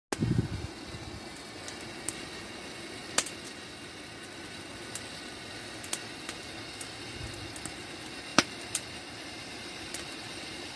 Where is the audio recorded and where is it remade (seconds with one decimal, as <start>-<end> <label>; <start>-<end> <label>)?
0.0-8.3 recorded; 8.3-10.8 remade